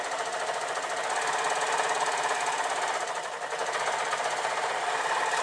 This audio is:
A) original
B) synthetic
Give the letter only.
A